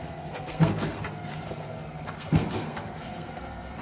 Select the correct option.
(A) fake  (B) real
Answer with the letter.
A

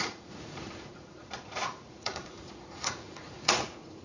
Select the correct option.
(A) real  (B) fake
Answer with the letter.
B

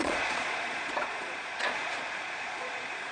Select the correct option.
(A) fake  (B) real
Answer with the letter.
A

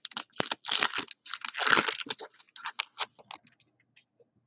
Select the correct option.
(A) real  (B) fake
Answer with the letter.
A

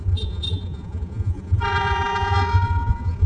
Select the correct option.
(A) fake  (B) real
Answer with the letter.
A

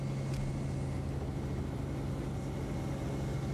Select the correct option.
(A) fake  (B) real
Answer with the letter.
B